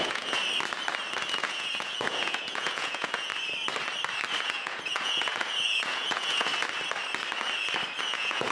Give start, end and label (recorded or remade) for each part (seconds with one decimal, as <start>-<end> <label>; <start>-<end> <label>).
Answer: 0.0-0.4 remade; 0.4-1.3 recorded; 1.3-3.3 remade; 3.3-4.4 recorded; 4.4-6.5 remade; 6.5-8.0 recorded; 8.0-8.5 remade